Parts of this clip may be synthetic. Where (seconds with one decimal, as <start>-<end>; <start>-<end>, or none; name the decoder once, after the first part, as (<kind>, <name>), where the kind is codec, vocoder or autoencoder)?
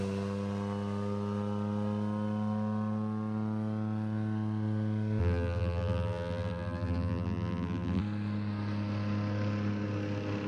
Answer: 5.2-8.0 (vocoder, BigVGAN v2)